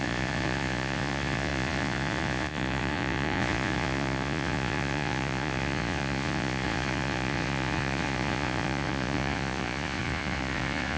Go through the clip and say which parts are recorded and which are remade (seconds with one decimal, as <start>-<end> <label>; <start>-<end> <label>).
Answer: 0.0-11.0 remade